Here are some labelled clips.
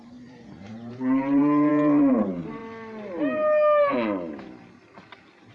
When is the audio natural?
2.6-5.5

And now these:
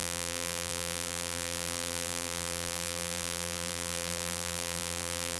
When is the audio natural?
none

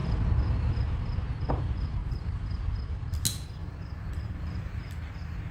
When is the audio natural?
0.0-2.0; 2.6-3.6; 4.8-5.5

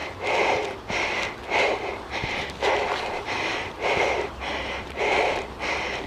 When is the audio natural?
0.0-1.4; 3.5-4.0

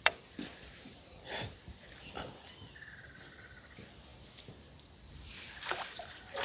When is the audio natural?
4.1-5.1